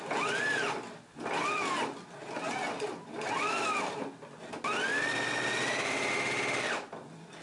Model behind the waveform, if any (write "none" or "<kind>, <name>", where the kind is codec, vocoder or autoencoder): none